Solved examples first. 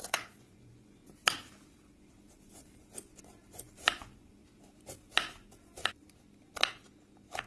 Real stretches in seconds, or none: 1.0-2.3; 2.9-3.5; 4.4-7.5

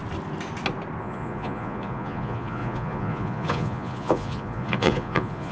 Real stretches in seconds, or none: 0.0-1.0

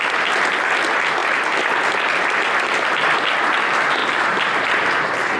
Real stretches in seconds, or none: 0.0-5.4

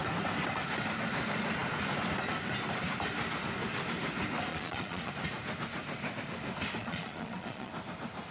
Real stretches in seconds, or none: 0.0-4.5; 5.1-6.8; 7.7-8.3